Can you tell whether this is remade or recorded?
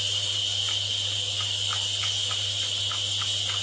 recorded